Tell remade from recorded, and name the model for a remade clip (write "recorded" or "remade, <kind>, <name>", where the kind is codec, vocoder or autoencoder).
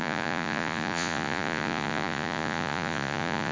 remade, vocoder, Vocos